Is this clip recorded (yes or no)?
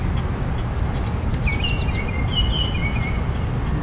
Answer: yes